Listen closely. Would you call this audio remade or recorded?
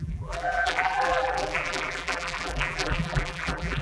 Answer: remade